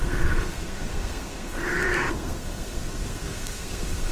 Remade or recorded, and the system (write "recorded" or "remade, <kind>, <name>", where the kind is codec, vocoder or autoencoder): remade, codec, SNAC